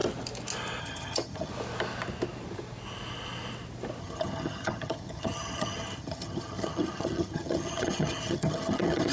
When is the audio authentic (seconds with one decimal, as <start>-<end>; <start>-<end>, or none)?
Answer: 0.0-0.8; 1.5-4.0